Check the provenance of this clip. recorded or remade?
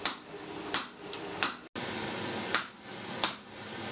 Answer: recorded